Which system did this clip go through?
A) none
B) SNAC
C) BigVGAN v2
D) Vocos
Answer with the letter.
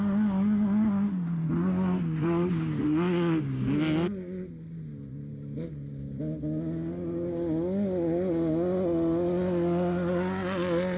A